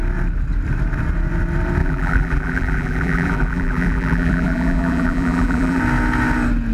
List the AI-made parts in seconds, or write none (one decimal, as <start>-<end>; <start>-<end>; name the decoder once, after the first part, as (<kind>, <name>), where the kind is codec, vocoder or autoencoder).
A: 1.8-5.8 (vocoder, BigVGAN v2)